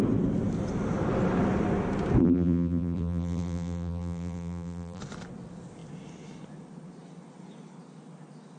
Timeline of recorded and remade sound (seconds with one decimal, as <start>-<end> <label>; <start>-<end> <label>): 0.0-2.2 recorded; 2.2-5.0 remade; 5.0-8.6 recorded